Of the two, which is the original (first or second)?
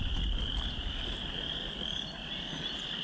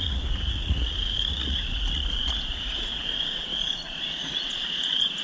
first